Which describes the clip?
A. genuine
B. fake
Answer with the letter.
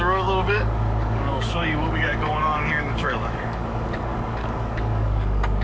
B